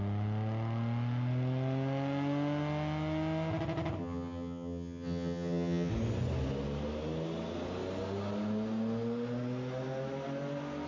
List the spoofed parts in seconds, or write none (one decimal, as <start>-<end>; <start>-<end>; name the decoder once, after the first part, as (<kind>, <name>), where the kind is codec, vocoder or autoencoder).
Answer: 4.0-5.9 (vocoder, HiFi-GAN)